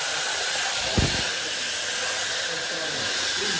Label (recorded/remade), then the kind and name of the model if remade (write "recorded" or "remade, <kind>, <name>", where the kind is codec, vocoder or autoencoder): recorded